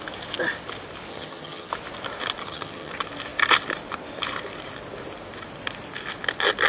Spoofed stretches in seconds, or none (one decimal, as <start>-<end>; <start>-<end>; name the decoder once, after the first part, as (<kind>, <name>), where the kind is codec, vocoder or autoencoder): 1.1-1.7 (vocoder, HiFi-GAN); 2.4-2.9